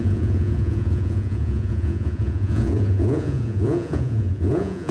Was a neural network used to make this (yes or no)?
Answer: yes